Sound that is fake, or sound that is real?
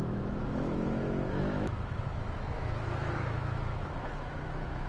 fake